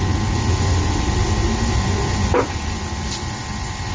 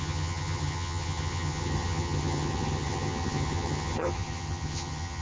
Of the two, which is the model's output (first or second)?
second